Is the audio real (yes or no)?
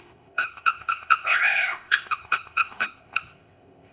no